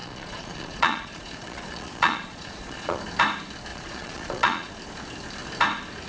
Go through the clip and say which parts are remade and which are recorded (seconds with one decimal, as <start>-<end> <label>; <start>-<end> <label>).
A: 0.0-3.0 remade; 3.0-3.7 recorded; 3.7-4.7 remade; 4.7-6.1 recorded